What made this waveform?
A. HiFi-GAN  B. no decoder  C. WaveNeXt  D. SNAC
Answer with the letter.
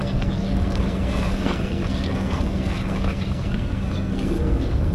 D